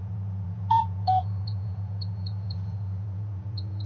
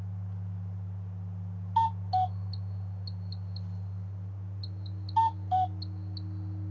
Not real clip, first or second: first